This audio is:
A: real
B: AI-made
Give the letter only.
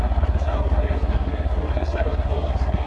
B